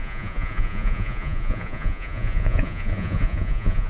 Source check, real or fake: fake